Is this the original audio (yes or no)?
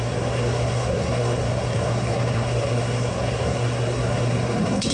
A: no